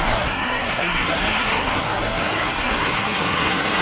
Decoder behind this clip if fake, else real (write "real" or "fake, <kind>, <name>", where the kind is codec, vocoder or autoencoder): fake, codec, SNAC